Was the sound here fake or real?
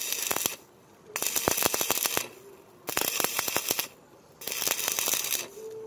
real